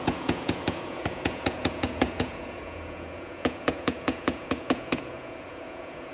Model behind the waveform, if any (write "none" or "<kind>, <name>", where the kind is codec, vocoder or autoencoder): vocoder, Vocos